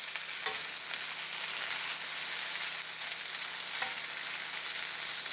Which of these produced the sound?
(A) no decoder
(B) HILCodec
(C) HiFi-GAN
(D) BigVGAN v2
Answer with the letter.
A